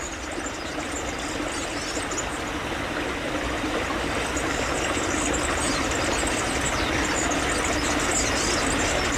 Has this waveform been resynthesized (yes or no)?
no